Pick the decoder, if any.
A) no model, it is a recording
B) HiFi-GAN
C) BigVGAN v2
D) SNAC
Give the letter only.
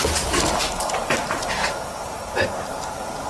A